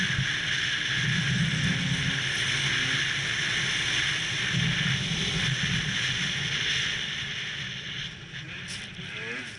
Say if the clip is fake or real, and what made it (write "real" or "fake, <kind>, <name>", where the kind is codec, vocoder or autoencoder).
real